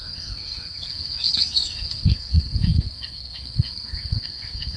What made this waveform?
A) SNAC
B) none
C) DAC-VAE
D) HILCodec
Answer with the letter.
A